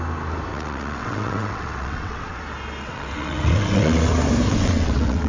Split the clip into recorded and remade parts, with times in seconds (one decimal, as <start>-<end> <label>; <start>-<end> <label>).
0.0-0.5 recorded; 0.5-2.4 remade; 2.4-2.8 recorded; 2.8-4.1 remade; 4.1-4.5 recorded; 4.5-5.3 remade